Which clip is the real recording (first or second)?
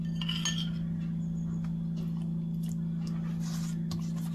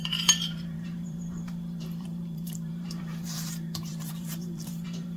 first